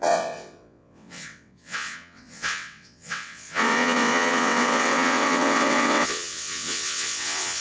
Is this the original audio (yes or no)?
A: no